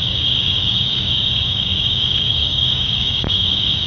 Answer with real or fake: fake